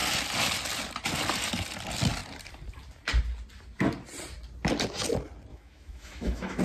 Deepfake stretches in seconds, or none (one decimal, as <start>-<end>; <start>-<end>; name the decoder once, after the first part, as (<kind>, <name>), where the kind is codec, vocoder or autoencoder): 5.5-6.6 (autoencoder, DAC-VAE)